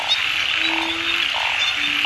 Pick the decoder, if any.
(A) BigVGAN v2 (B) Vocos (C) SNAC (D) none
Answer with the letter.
D